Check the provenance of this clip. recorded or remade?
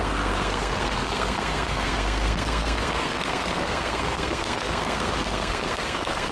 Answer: remade